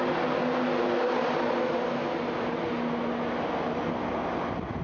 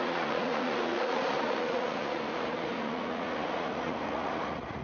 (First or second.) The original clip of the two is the first